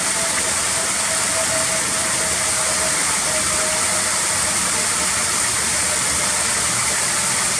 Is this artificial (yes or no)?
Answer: no